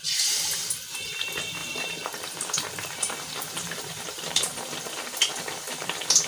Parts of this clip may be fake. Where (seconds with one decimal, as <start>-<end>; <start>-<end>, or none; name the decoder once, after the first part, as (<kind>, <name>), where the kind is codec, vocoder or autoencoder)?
1.6-4.5 (vocoder, BigVGAN v2)